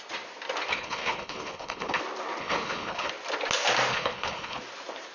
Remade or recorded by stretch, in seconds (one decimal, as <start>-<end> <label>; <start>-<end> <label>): 0.0-0.7 recorded; 0.7-2.0 remade; 2.0-2.4 recorded; 2.4-3.1 remade; 3.1-3.9 recorded; 3.9-4.6 remade; 4.6-5.1 recorded